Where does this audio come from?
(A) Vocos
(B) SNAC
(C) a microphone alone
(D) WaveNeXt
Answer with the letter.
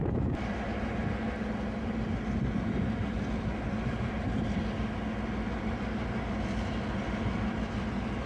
C